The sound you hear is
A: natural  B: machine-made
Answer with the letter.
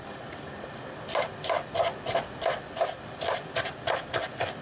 A